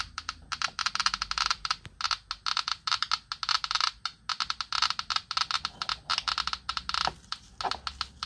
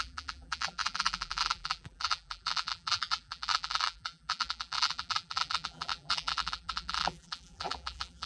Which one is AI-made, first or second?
second